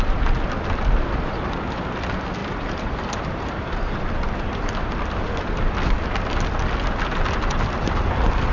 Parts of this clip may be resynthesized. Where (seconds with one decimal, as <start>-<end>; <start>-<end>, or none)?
2.4-4.7